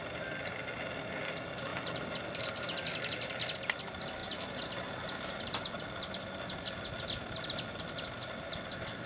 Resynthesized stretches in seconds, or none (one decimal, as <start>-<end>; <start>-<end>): none